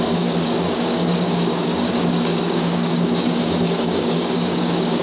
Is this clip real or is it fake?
fake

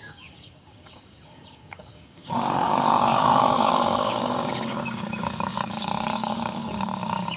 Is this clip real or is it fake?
fake